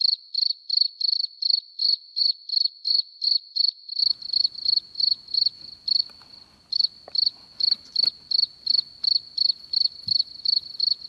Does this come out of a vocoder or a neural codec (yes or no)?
no